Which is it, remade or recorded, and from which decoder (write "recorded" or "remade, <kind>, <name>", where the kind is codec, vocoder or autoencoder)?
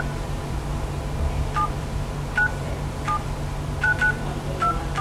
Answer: remade, vocoder, BigVGAN v2